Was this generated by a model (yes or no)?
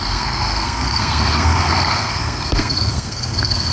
yes